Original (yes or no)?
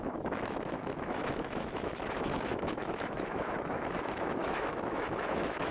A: no